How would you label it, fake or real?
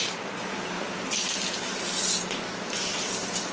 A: real